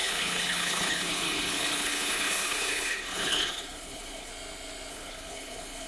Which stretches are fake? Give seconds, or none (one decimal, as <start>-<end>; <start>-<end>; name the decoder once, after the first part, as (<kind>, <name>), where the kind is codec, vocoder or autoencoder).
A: 0.0-4.3 (codec, HILCodec); 4.9-5.9